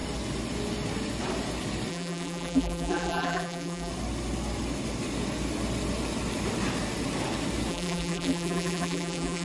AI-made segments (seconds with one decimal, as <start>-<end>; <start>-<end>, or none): 1.9-3.9; 7.7-9.4